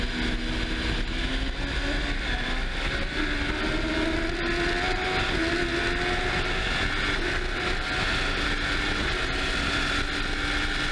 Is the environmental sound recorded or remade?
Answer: recorded